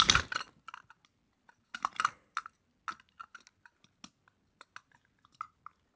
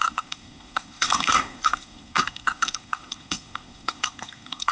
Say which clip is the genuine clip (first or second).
first